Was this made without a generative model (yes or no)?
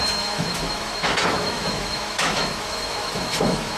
no